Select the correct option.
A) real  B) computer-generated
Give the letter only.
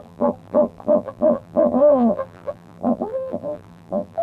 B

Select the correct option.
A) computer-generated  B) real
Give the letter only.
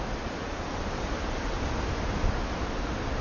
B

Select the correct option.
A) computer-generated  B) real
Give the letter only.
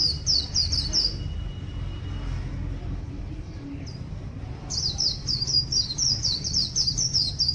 B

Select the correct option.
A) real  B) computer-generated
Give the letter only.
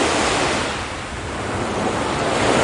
A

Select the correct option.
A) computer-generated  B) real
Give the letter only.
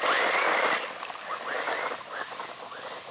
B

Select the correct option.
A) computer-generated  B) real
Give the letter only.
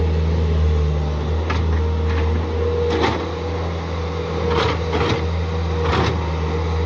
B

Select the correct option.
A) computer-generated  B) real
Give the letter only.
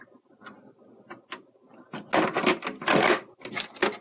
B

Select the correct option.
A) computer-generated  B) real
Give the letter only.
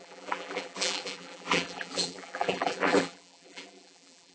A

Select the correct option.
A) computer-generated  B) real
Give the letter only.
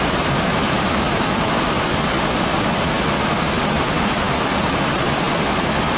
B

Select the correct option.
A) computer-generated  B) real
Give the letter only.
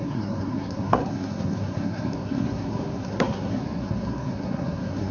A